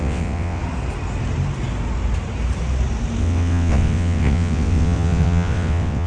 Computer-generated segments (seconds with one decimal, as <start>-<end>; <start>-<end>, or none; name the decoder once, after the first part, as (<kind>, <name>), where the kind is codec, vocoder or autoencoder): 0.0-0.6 (vocoder, WaveNeXt); 3.2-6.1